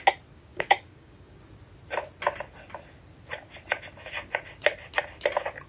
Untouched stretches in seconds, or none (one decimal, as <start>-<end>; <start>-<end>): 0.0-0.5; 1.4-5.7